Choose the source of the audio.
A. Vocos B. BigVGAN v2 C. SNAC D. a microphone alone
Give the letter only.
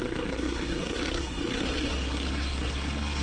C